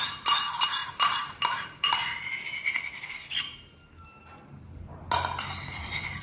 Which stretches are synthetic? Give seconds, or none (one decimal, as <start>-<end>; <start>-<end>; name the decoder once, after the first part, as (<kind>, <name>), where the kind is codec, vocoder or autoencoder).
none